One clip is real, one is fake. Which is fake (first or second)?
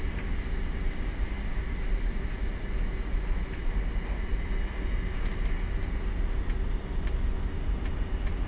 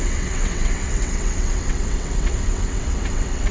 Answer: second